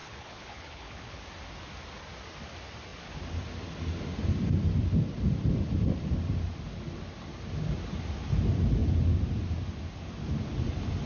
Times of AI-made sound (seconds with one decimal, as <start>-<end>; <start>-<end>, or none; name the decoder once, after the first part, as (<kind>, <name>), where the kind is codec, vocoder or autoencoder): 0.0-1.2 (codec, HILCodec)